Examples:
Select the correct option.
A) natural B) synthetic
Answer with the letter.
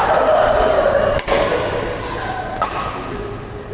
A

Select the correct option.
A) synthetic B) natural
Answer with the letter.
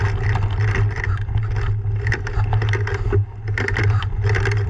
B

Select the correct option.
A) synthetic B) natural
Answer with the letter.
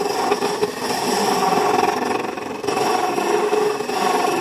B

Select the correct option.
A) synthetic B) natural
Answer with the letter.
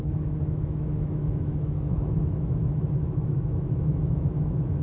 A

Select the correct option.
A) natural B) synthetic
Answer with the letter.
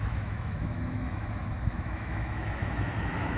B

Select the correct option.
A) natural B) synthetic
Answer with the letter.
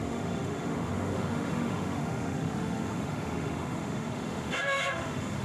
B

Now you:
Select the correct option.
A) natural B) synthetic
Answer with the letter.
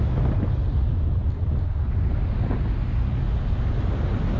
A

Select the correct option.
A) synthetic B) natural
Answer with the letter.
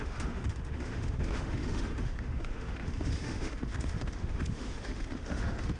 A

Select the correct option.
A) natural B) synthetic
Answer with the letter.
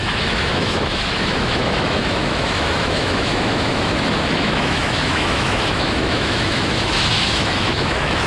B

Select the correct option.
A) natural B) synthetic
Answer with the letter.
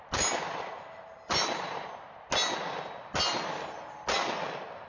A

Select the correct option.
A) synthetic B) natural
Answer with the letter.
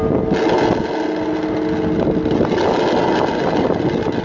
B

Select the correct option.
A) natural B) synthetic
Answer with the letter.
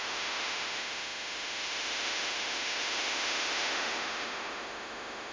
B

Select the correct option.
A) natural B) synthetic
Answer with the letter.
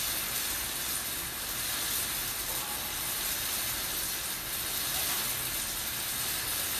A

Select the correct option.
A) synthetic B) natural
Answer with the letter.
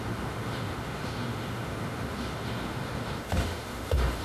A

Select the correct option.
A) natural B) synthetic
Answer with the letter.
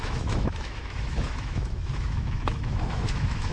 B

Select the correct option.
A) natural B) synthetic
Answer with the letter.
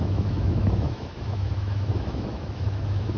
B